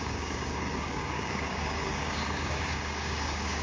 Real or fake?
fake